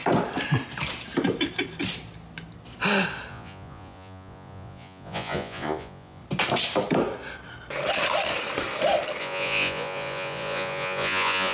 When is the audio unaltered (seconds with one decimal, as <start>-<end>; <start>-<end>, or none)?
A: 0.0-3.3; 6.2-9.2